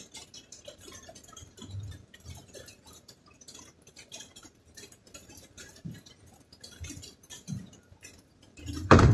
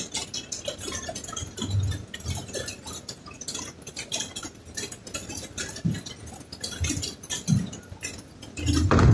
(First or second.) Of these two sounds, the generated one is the first